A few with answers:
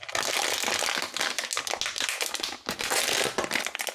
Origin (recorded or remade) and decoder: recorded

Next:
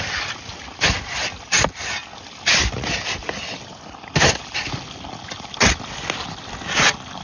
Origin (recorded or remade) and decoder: recorded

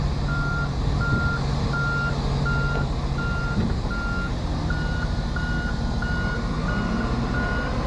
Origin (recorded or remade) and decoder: recorded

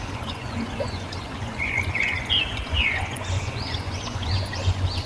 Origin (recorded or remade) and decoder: remade, vocoder, Vocos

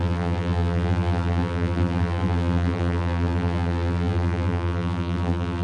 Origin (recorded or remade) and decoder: remade, vocoder, BigVGAN v2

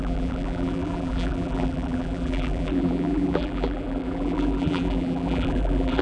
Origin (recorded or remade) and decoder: remade, vocoder, BigVGAN v2